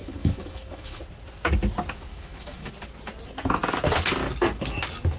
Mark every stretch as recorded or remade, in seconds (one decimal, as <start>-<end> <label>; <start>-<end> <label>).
0.0-1.0 remade; 1.0-2.1 recorded; 2.1-2.7 remade; 2.7-5.2 recorded